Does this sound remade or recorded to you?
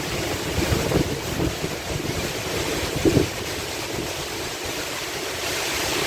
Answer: remade